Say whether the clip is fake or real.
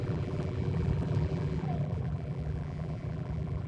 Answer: fake